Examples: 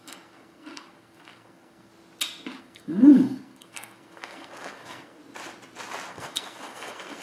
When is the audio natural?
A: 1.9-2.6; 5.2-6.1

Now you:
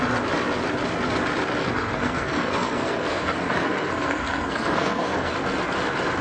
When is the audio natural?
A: 0.0-1.6; 5.3-6.2

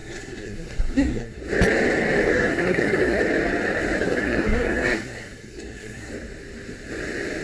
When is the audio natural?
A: 1.4-2.3; 3.2-4.0; 6.1-7.4

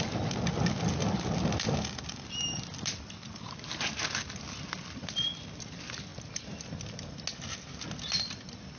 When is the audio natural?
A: 0.0-8.8

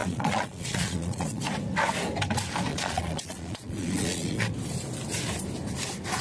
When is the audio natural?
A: 1.4-2.7; 4.5-6.2